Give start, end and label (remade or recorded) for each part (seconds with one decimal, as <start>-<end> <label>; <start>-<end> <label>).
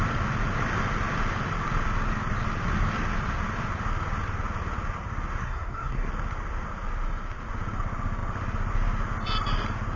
0.0-5.4 recorded; 5.4-6.1 remade; 6.1-10.0 recorded